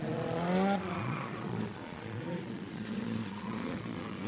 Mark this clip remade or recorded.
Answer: remade